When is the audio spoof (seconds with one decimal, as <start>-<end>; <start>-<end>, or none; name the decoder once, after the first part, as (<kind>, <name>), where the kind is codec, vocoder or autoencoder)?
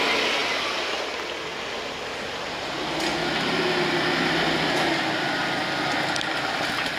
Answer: none